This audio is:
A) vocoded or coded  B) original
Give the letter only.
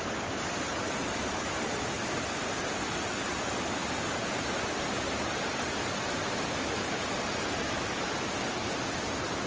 B